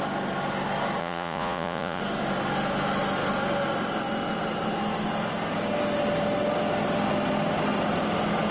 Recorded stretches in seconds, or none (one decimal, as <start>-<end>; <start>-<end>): 0.0-1.0; 2.0-8.5